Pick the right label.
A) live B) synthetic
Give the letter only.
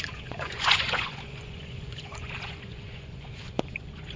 B